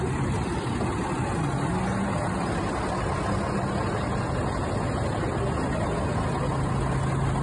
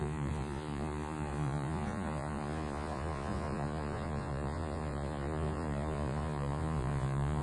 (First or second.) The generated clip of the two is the second